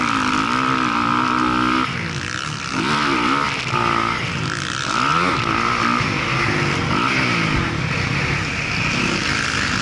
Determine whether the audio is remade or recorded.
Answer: recorded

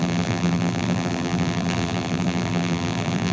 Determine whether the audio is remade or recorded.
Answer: remade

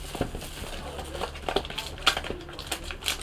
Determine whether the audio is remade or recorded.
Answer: recorded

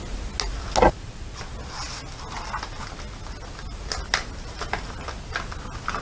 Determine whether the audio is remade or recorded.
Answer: recorded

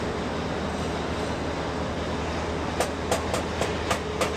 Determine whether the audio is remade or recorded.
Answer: recorded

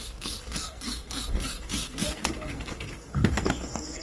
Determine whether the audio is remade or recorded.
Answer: remade